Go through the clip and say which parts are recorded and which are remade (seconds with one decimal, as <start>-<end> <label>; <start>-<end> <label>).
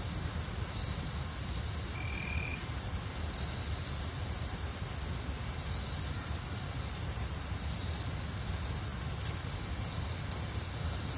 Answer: 0.0-11.2 recorded